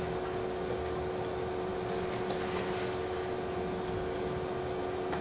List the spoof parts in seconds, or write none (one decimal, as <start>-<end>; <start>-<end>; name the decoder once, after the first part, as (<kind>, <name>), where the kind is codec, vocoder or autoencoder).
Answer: none